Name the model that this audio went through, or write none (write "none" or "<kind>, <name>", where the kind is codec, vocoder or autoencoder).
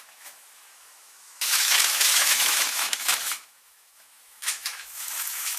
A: autoencoder, DAC-VAE